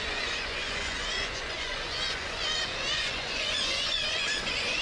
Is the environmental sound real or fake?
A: fake